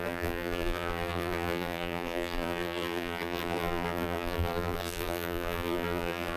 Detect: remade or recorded remade